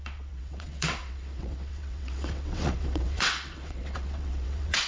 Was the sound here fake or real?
fake